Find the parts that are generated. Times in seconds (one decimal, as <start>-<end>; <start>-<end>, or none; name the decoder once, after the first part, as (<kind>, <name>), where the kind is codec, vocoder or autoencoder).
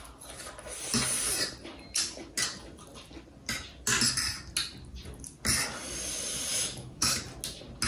6.5-7.2 (autoencoder, DAC-VAE)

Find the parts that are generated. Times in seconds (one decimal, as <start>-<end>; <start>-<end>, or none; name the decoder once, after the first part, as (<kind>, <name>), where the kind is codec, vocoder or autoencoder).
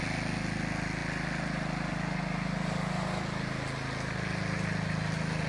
none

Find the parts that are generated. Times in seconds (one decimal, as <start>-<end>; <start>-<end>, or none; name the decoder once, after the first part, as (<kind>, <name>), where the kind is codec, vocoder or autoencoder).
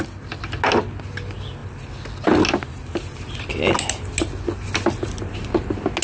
none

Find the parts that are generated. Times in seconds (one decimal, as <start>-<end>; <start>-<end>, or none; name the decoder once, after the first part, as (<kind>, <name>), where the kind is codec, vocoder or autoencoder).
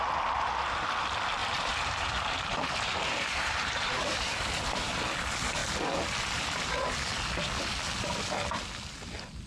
1.4-4.9 (vocoder, BigVGAN v2)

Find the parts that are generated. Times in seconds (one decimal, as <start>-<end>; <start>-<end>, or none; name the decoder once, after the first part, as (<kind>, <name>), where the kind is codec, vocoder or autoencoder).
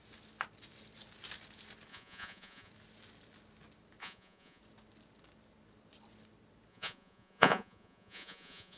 1.9-2.7 (vocoder, Vocos); 4.0-4.6; 6.7-8.8